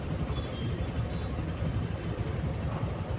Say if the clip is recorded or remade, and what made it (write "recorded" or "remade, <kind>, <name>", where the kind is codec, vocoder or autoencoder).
remade, vocoder, BigVGAN v2